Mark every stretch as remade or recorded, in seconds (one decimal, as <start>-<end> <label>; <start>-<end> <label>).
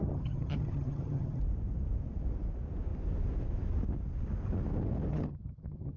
0.0-1.4 remade; 1.4-5.1 recorded; 5.1-6.0 remade